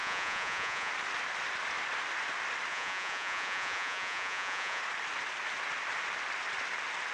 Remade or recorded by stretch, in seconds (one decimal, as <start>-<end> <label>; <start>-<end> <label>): 0.0-0.9 remade; 0.9-2.7 recorded; 2.7-4.8 remade; 4.8-7.1 recorded